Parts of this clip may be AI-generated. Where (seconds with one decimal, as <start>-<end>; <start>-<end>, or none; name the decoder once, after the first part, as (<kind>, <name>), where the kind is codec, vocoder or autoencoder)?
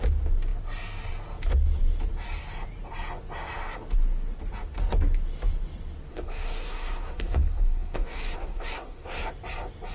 6.1-9.3 (codec, SNAC)